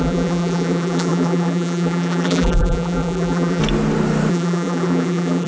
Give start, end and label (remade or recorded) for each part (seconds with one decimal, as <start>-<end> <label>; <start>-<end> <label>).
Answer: 0.0-3.6 remade; 3.6-4.3 recorded; 4.3-5.5 remade